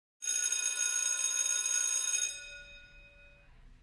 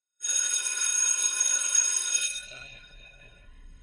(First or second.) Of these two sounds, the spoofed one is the second